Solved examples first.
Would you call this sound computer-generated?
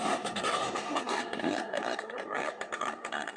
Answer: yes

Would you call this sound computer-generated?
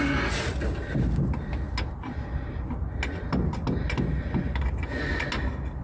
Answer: no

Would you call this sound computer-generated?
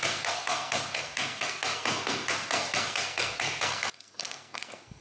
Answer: yes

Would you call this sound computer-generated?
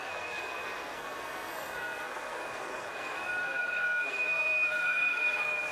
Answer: yes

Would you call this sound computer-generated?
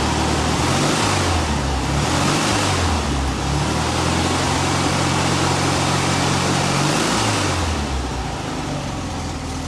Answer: no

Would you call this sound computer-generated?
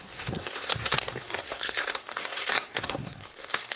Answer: yes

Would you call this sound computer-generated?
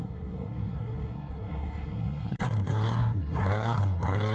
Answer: yes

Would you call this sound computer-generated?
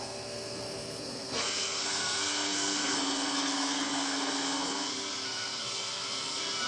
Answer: yes